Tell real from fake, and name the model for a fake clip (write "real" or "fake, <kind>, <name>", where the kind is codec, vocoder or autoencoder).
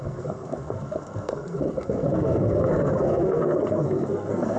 fake, codec, SNAC